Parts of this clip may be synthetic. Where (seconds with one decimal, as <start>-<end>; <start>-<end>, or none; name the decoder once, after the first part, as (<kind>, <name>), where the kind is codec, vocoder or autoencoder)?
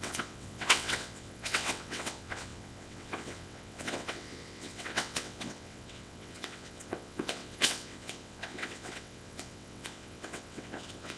0.0-11.2 (vocoder, WaveNeXt)